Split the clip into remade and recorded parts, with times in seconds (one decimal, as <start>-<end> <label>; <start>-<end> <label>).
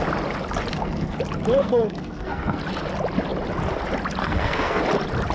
0.0-0.7 recorded; 0.7-1.2 remade; 1.2-1.6 recorded; 1.6-2.6 remade; 2.6-4.2 recorded; 4.2-4.8 remade; 4.8-5.3 recorded